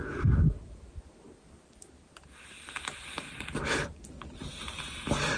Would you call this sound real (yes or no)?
yes